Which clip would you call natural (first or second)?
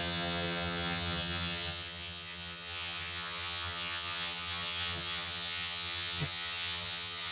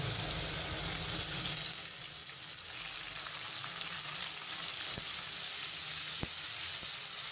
second